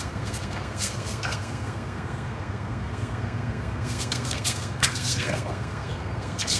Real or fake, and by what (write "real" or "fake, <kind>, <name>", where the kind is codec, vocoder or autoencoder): fake, codec, SNAC